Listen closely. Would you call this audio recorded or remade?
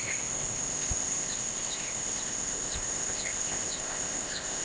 remade